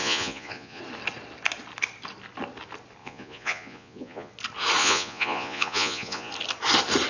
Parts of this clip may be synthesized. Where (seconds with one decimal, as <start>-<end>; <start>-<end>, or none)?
0.0-0.8; 3.0-4.3; 4.8-6.3